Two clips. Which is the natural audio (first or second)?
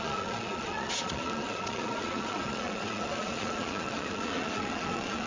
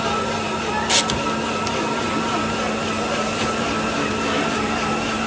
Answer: second